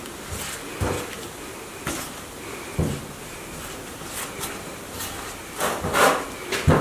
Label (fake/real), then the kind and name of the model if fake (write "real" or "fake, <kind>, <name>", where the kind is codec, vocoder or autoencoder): real